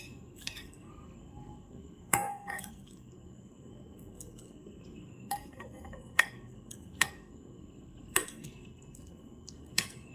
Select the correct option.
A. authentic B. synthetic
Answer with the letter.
B